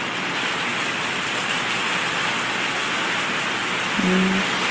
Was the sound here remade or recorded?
recorded